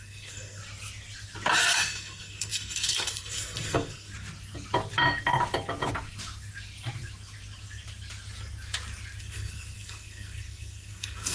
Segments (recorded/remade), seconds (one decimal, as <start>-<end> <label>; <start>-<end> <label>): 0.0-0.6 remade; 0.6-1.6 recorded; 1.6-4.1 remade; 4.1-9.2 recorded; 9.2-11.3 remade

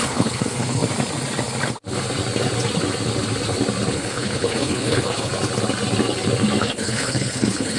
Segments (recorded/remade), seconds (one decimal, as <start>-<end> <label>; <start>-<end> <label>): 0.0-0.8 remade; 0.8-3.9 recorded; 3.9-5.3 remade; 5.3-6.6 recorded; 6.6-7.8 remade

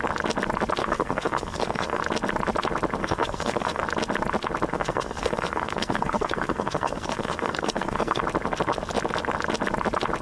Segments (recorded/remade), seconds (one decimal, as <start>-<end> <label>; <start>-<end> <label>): 0.0-0.8 recorded; 0.8-2.0 remade; 2.0-3.0 recorded; 3.0-3.8 remade; 3.8-4.7 recorded; 4.7-8.2 remade; 8.2-10.2 recorded

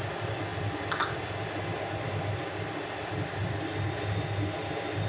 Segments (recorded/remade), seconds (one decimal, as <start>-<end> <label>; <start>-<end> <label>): 0.0-5.1 recorded

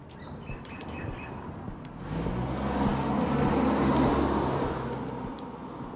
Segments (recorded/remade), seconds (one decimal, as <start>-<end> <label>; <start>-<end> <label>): 0.0-6.0 recorded

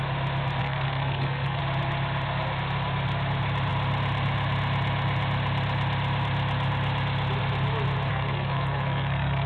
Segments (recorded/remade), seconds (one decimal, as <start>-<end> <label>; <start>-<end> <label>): 0.0-0.6 recorded; 0.6-1.6 remade; 1.6-8.1 recorded; 8.1-9.5 remade

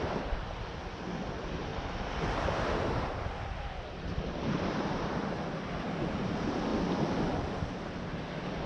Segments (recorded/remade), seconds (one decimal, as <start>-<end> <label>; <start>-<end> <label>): 0.0-8.7 recorded